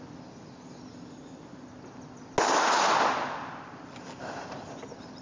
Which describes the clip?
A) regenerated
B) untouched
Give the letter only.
B